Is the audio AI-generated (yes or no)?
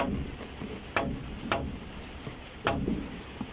no